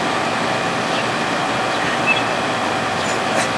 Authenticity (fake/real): real